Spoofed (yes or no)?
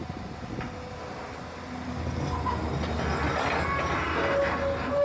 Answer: no